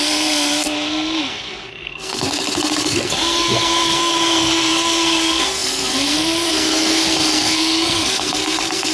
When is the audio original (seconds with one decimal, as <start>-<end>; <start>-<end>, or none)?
none